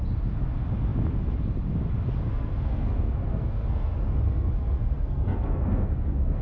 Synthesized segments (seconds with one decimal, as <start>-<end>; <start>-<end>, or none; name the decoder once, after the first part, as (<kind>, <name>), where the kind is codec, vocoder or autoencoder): 2.3-6.4 (codec, SNAC)